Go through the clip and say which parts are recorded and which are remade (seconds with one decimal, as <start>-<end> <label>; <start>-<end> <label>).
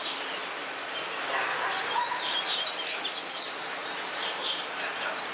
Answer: 0.0-0.4 remade; 0.4-3.2 recorded; 3.2-5.3 remade